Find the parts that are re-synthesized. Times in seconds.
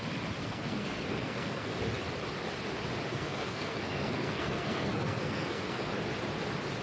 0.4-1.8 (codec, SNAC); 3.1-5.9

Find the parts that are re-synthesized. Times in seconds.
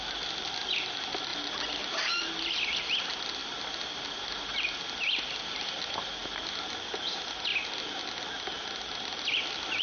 none